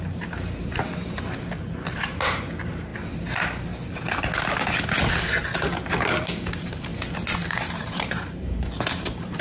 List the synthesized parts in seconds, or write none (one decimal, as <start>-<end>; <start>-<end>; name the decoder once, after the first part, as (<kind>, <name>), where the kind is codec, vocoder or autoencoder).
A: 0.0-2.9 (vocoder, BigVGAN v2); 5.8-6.9; 7.5-9.4